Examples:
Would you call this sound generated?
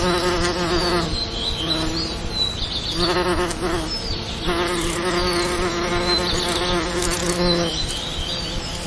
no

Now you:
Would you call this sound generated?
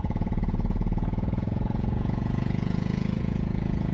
yes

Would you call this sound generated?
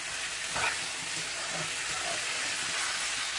no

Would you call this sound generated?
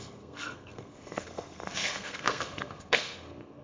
yes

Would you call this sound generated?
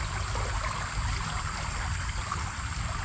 no